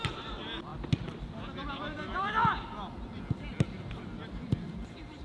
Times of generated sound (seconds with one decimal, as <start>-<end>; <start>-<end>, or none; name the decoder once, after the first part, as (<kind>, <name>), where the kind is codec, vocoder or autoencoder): none

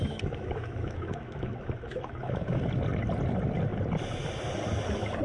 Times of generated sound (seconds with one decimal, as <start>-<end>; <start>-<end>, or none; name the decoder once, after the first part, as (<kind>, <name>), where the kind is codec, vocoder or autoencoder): 0.0-2.6 (autoencoder, DAC-VAE)

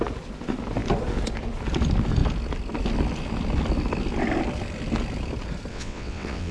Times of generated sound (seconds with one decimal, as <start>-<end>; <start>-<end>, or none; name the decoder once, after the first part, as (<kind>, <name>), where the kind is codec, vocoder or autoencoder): 5.7-6.5 (vocoder, WaveNeXt)

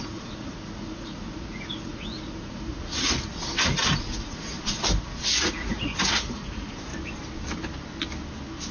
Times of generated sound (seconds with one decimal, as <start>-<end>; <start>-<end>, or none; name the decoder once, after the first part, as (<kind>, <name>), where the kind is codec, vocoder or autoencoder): 0.0-6.9 (vocoder, Vocos)

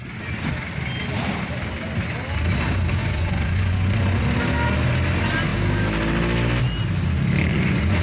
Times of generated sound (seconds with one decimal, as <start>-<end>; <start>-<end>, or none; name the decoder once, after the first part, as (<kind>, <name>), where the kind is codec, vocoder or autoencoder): 3.0-4.2 (vocoder, Vocos); 7.5-8.0

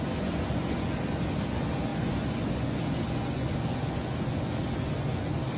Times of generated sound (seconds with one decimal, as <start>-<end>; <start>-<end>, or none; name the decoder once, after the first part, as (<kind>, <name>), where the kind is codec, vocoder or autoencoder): 0.0-5.6 (vocoder, Vocos)